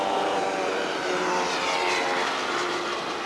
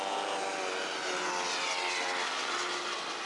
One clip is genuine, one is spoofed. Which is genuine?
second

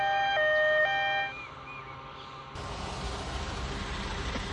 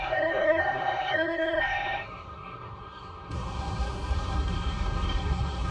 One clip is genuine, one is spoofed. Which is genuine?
first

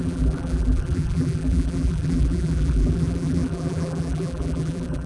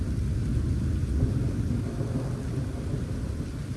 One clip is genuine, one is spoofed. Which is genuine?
second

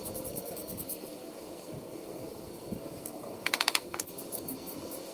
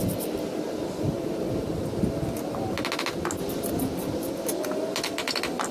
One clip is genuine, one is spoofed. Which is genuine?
second